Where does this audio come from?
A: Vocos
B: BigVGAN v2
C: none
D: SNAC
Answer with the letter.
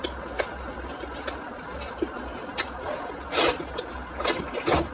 C